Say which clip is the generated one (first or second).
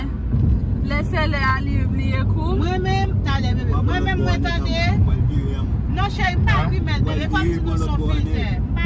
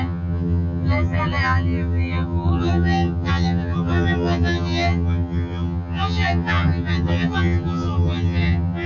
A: second